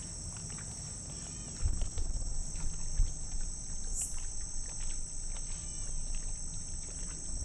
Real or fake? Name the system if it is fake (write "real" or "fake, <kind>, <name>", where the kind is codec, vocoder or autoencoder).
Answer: real